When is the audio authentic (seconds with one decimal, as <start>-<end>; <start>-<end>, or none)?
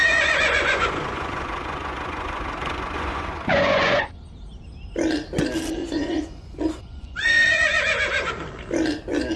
4.2-5.8; 8.3-9.4